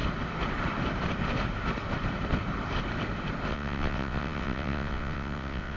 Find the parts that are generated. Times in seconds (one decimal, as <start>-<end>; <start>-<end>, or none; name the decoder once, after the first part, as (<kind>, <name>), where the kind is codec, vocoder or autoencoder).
3.5-5.8 (vocoder, WaveNeXt)